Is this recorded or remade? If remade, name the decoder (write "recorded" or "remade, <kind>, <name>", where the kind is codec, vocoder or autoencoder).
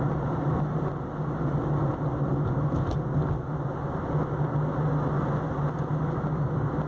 recorded